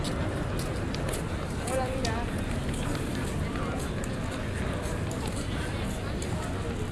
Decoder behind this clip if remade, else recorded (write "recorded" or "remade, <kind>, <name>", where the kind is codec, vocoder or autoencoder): recorded